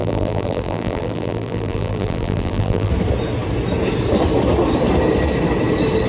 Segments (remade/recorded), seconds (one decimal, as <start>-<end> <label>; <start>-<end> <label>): 0.0-2.9 remade; 2.9-6.1 recorded